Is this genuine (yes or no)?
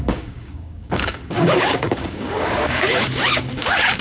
no